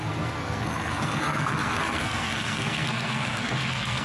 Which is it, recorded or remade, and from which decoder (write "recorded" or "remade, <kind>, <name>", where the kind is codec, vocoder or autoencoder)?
remade, codec, SNAC